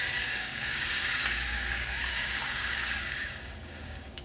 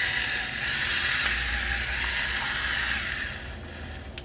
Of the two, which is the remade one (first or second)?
first